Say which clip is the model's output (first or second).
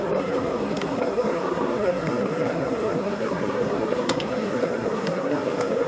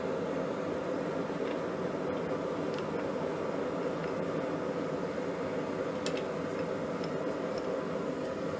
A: first